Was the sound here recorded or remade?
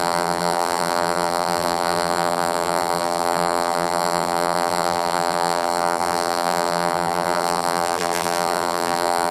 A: remade